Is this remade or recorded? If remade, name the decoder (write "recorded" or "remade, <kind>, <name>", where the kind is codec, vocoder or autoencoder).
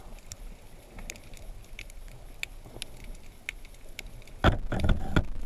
recorded